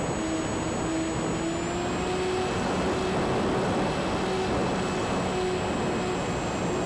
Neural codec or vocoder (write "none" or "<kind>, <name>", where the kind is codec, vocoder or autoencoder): none